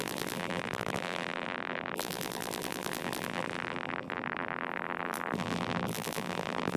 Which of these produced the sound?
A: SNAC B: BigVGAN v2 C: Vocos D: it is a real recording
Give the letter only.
B